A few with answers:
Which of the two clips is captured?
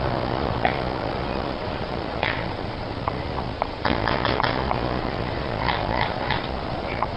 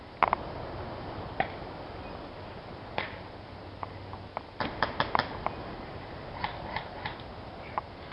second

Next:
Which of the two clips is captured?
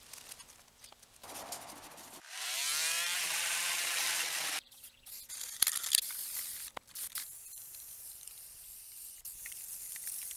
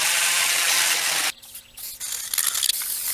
second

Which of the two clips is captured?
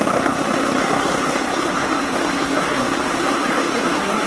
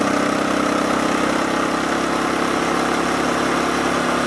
second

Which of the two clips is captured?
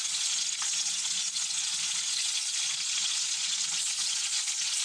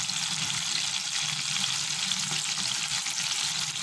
second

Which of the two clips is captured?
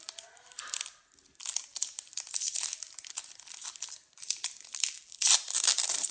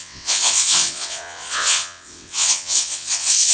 first